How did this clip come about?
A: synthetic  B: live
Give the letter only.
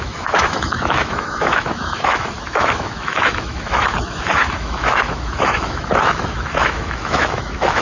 A